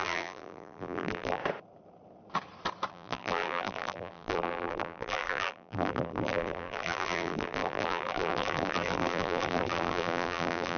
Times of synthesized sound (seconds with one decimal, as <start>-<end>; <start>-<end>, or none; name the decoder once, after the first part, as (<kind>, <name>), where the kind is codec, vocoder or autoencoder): 0.0-1.4 (vocoder, BigVGAN v2); 2.9-10.8